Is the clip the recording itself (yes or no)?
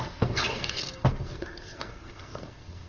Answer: no